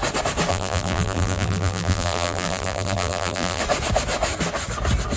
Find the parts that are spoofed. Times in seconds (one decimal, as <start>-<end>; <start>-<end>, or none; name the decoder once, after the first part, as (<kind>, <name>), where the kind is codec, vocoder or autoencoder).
0.5-3.6 (vocoder, BigVGAN v2)